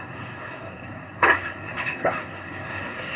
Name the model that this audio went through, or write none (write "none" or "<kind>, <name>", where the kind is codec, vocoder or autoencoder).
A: codec, SNAC